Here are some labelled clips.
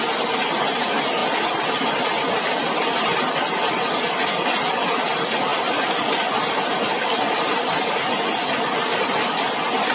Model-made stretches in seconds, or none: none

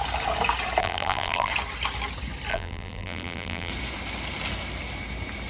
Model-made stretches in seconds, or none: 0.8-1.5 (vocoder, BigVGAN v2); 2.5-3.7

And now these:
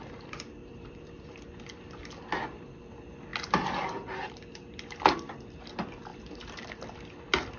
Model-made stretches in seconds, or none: 0.6-1.4 (vocoder, BigVGAN v2); 6.1-6.8

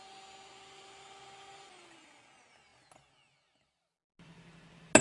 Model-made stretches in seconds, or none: none

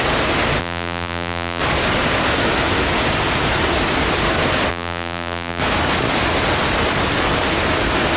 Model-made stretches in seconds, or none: 0.6-1.6 (vocoder, BigVGAN v2); 4.7-5.6